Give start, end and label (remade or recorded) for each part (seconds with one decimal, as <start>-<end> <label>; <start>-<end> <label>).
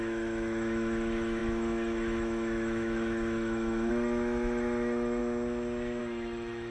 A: 0.0-5.2 remade; 5.2-6.0 recorded; 6.0-6.7 remade